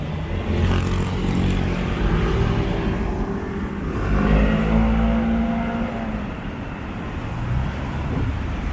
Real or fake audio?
real